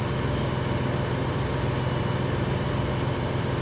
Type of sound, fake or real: real